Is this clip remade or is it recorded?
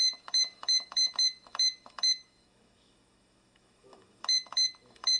remade